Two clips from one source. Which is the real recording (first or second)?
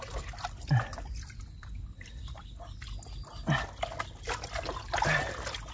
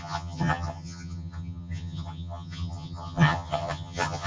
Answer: first